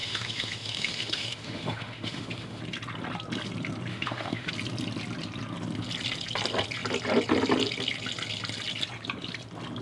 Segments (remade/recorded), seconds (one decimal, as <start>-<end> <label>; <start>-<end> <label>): 0.0-2.6 remade; 2.6-3.9 recorded; 3.9-4.5 remade; 4.5-9.8 recorded